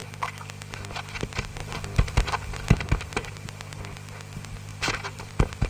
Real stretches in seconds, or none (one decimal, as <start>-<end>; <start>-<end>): 0.0-4.7; 5.3-5.7